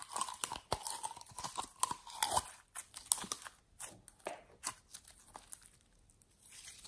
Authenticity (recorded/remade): recorded